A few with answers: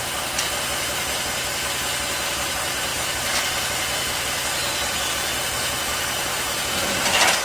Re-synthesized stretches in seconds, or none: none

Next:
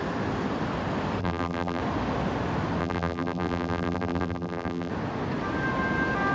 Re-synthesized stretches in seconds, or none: 1.2-1.8 (vocoder, BigVGAN v2); 2.8-4.9

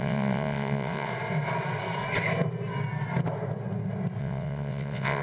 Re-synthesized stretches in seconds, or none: 0.0-1.1 (vocoder, WaveNeXt); 4.2-5.2

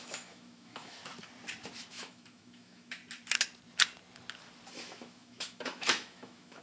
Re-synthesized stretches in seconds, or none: 0.0-1.0 (autoencoder, DAC-VAE); 1.9-3.0; 4.7-6.6

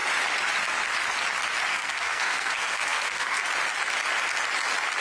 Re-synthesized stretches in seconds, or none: 1.7-3.4 (codec, SNAC)

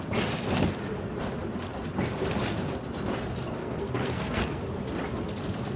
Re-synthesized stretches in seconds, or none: 3.6-4.6 (codec, SNAC)